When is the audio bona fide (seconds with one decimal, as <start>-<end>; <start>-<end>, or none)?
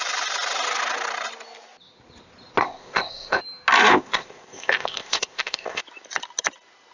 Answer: 0.0-2.6; 3.4-3.9; 5.8-6.9